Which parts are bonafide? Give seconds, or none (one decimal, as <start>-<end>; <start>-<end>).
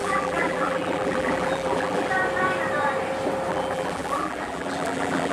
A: 2.1-3.5